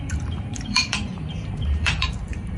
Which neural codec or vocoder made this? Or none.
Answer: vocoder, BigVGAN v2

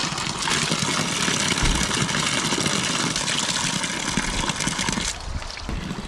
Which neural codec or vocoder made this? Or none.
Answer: none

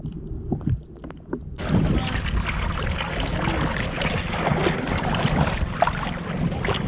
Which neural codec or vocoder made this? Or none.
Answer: none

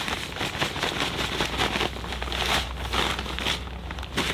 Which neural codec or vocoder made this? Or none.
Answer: none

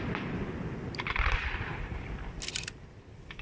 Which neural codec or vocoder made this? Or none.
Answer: vocoder, BigVGAN v2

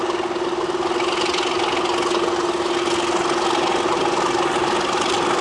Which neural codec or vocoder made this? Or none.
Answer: none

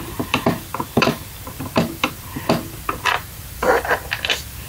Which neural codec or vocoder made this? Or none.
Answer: vocoder, BigVGAN v2